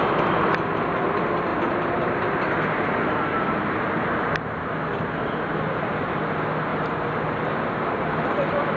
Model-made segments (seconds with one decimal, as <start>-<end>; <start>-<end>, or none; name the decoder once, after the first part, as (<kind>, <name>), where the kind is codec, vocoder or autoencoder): none